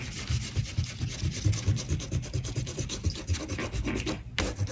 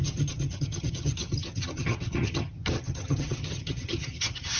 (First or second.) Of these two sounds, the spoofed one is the second